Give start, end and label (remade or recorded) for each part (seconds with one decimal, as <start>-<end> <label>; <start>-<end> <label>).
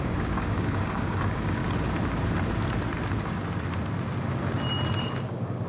0.0-1.6 remade; 1.6-5.0 recorded; 5.0-5.7 remade